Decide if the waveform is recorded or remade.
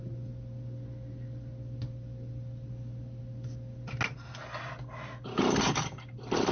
recorded